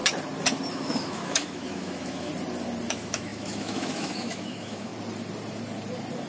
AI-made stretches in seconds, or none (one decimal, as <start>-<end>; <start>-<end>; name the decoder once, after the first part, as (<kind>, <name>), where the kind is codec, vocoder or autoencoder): 0.7-2.3 (autoencoder, DAC-VAE); 2.9-4.9